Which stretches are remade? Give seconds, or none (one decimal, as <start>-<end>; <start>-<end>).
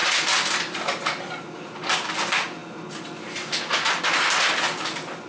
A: none